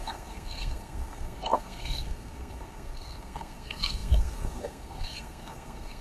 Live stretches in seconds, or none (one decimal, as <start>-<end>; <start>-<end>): none